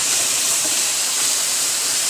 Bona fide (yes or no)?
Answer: no